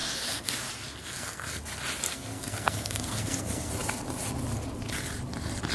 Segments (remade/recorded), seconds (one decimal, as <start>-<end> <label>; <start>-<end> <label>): 0.0-0.5 remade; 0.5-1.0 recorded; 1.0-1.6 remade; 1.6-2.1 recorded; 2.1-3.7 remade; 3.7-5.7 recorded